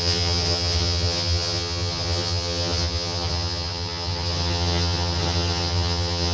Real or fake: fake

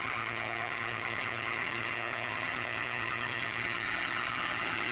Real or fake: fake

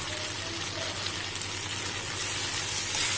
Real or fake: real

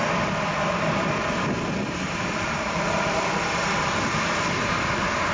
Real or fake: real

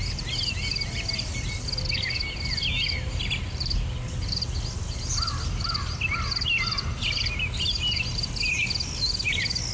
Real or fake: real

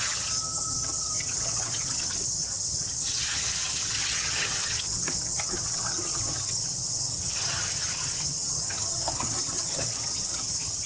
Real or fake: fake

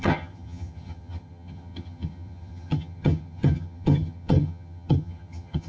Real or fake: fake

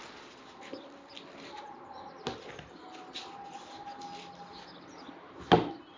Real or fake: real